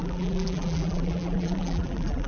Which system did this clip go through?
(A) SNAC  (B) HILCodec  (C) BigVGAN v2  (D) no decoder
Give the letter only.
C